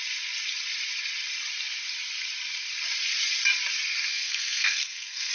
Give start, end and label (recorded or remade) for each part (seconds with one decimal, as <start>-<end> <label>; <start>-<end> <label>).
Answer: 0.0-4.1 recorded; 4.1-5.3 remade